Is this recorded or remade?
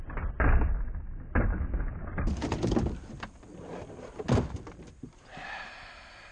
recorded